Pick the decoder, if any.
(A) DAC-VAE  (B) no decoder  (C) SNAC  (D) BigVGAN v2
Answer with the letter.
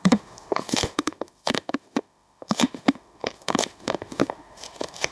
A